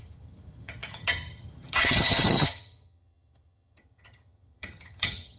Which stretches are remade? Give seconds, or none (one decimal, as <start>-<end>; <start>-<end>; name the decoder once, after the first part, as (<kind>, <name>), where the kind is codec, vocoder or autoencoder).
0.0-5.4 (vocoder, HiFi-GAN)